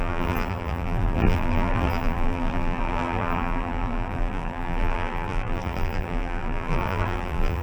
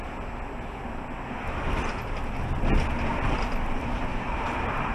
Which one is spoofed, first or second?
first